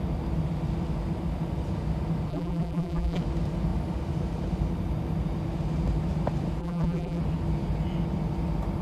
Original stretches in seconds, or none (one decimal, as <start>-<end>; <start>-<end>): 0.0-2.3; 3.2-6.6; 7.2-8.8